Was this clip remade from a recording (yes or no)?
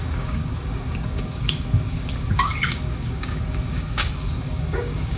yes